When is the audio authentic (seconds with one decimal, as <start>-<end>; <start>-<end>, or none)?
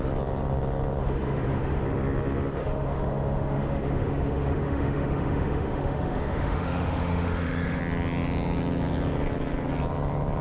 0.0-1.0; 1.8-2.6; 7.8-10.4